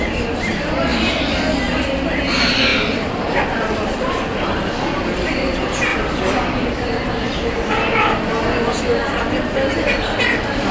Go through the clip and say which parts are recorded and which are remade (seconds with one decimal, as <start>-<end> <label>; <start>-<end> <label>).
0.0-2.7 recorded; 2.7-4.2 remade; 4.2-5.9 recorded; 5.9-6.6 remade; 6.6-10.7 recorded